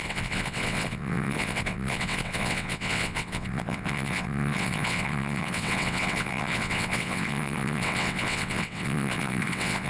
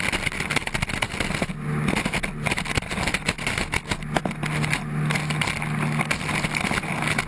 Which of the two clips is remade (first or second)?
first